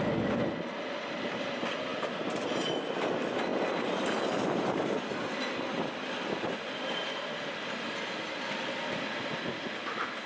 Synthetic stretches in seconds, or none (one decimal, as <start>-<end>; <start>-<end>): none